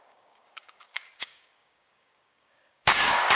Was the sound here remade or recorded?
remade